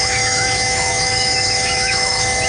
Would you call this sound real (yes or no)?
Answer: no